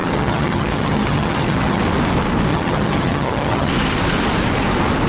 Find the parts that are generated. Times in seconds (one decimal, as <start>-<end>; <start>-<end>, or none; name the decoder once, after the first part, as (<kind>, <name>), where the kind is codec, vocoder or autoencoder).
0.0-1.8 (vocoder, HiFi-GAN); 2.5-3.7